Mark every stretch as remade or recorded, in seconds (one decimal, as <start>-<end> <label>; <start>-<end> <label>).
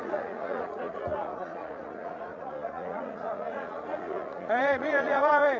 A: 0.0-5.6 remade